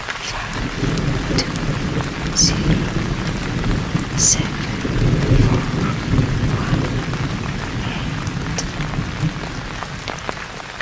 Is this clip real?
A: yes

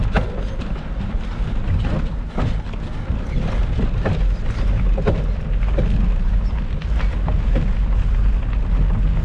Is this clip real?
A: yes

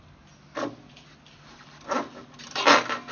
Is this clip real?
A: yes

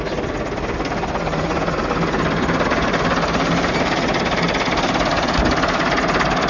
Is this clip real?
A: yes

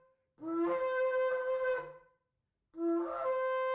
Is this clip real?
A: yes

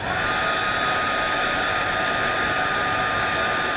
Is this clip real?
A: yes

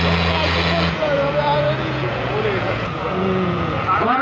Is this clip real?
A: no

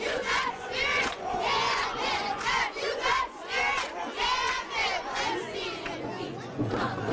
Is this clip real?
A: no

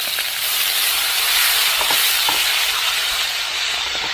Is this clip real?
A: yes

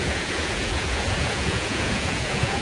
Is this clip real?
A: no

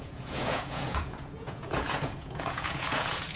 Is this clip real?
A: no